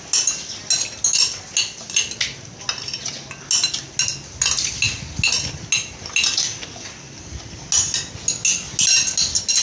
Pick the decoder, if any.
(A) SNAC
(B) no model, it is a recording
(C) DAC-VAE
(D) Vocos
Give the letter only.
B